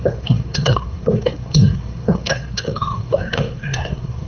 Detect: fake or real fake